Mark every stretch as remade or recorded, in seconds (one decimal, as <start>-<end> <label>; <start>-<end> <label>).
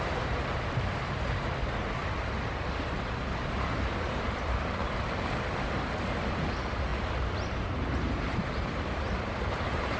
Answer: 0.0-2.0 remade; 2.0-3.0 recorded; 3.0-4.8 remade; 4.8-6.5 recorded; 6.5-6.9 remade; 6.9-7.6 recorded; 7.6-10.0 remade